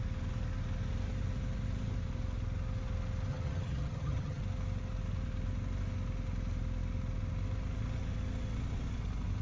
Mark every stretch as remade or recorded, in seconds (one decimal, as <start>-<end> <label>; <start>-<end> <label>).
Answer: 0.0-3.3 recorded; 3.3-4.4 remade; 4.4-9.4 recorded